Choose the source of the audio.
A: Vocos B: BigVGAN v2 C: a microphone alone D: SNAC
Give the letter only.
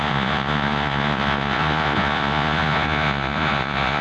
A